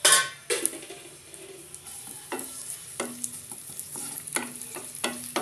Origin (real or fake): real